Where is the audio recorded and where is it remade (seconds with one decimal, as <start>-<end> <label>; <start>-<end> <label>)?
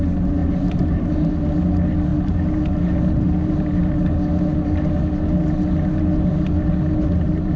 0.0-0.4 recorded; 0.4-1.3 remade; 1.3-7.6 recorded